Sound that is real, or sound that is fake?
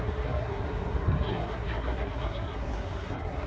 fake